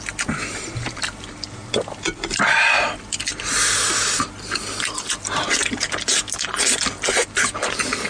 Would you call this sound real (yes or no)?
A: yes